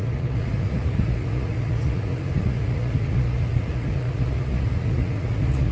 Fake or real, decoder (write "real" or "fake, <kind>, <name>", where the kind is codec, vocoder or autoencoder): fake, vocoder, Vocos